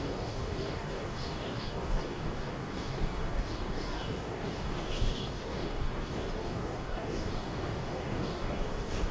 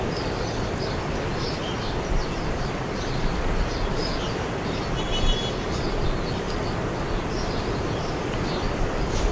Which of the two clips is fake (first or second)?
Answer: first